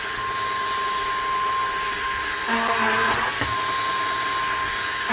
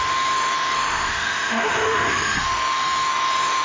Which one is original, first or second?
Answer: first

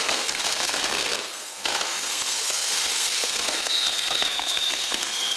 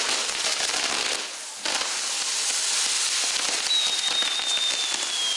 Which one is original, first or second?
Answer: second